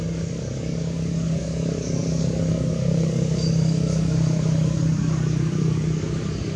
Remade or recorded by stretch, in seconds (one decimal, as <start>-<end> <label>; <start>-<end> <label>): 0.0-6.6 remade